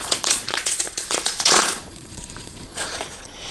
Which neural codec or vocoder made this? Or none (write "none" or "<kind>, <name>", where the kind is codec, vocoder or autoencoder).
vocoder, Vocos